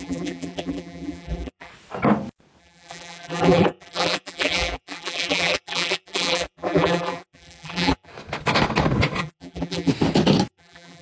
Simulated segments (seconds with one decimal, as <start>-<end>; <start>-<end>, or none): 0.0-1.7; 2.6-8.1; 9.2-9.9; 10.5-11.0